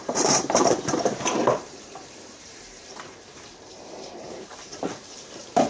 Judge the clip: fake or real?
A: fake